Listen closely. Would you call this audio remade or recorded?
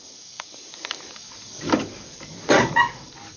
remade